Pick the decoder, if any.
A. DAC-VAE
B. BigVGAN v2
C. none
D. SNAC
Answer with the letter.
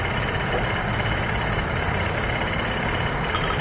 C